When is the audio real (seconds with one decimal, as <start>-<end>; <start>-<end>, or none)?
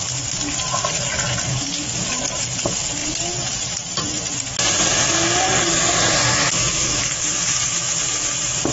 0.0-6.3; 7.1-8.7